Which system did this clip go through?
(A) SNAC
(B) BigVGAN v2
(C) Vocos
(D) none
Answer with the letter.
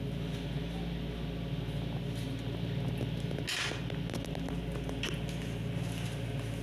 D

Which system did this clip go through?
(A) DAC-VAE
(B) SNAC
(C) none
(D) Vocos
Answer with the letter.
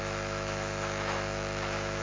A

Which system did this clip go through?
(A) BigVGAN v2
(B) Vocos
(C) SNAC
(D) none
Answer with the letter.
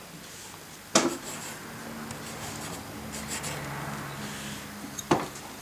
D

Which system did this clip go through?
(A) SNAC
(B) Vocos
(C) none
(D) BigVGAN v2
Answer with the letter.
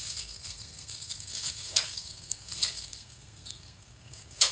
A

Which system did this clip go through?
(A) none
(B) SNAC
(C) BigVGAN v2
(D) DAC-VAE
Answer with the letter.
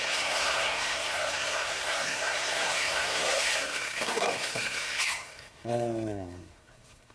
B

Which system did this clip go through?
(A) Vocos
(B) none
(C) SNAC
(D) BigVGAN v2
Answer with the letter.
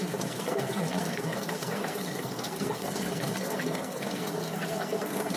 C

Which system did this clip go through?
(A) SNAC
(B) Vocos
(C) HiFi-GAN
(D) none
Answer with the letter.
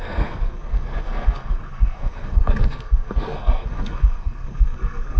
A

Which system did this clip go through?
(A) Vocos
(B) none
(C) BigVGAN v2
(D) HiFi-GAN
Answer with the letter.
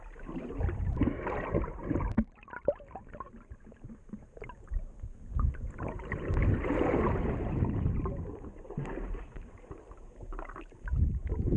C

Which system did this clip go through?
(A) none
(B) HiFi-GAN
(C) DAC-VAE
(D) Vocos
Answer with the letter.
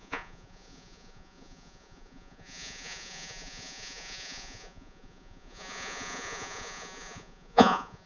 D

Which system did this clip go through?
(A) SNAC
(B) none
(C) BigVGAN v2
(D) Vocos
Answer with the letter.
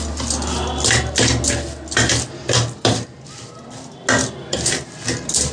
B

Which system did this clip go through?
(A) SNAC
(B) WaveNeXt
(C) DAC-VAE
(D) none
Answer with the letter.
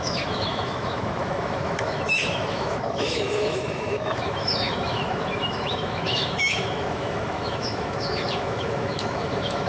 C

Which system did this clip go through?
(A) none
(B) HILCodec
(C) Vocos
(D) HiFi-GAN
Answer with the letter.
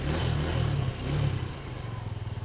A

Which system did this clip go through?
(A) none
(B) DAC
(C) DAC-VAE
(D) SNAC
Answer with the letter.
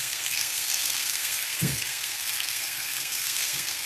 D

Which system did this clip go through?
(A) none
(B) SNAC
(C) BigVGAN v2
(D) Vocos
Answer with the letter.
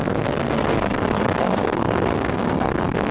B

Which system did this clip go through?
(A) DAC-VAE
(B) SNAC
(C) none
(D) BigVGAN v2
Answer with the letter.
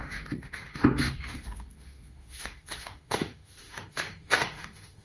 A